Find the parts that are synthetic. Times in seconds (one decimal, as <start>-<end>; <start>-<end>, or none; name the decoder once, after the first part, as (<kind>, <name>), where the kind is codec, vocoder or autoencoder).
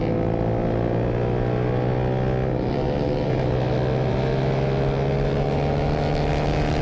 none